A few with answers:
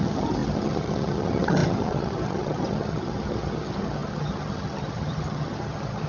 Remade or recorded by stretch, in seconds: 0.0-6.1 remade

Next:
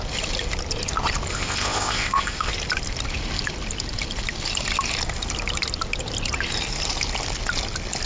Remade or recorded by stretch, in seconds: 0.0-1.3 recorded; 1.3-2.5 remade; 2.5-8.1 recorded

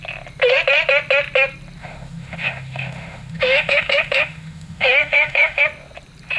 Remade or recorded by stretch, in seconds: 0.0-1.8 recorded; 1.8-5.6 remade; 5.6-6.4 recorded

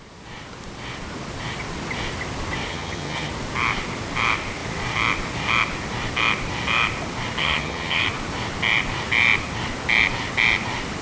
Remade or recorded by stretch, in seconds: 0.0-2.7 recorded; 2.7-3.3 remade; 3.3-7.4 recorded; 7.4-8.0 remade; 8.0-11.0 recorded

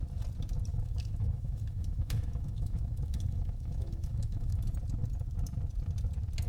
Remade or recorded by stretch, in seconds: 0.0-0.7 recorded; 0.7-4.6 remade; 4.6-6.5 recorded

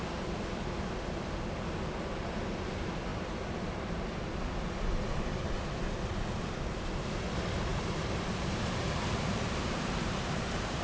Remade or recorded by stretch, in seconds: 0.0-3.1 recorded; 3.1-4.2 remade; 4.2-7.7 recorded; 7.7-10.8 remade